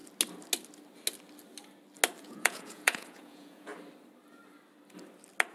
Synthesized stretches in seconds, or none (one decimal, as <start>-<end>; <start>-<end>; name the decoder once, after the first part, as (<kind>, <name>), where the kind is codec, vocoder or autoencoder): 2.2-3.7 (vocoder, Vocos)